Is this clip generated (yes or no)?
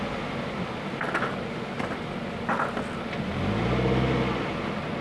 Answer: no